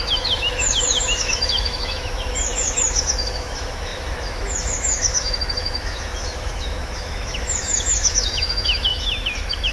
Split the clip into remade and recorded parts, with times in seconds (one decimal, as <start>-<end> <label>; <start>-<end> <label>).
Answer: 0.0-9.7 remade